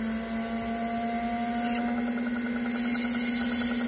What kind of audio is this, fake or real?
real